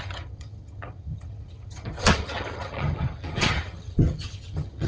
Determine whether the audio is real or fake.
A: fake